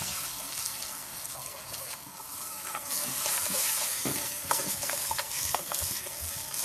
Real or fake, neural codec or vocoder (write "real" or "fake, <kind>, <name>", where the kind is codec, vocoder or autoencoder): fake, codec, SNAC